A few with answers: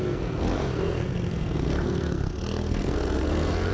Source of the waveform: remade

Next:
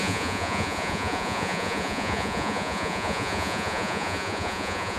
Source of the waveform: remade